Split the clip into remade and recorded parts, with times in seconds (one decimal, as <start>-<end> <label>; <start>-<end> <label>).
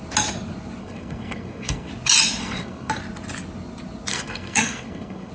0.0-0.8 recorded; 0.8-1.9 remade; 1.9-2.4 recorded; 2.4-2.9 remade; 2.9-4.1 recorded; 4.1-5.3 remade